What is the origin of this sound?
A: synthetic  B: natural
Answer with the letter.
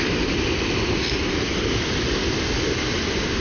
B